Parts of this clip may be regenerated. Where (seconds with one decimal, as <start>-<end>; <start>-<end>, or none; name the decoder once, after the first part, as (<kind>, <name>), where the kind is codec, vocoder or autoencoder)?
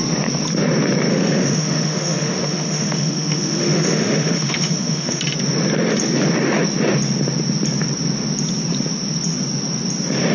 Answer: 1.1-5.2 (autoencoder, DAC-VAE)